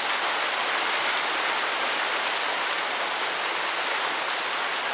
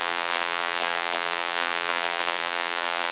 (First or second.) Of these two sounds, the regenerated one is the second